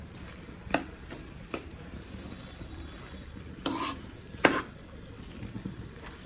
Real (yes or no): no